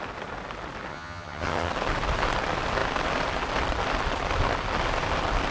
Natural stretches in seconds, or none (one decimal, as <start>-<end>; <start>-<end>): 0.0-0.9; 1.7-5.5